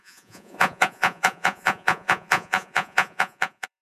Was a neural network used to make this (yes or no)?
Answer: yes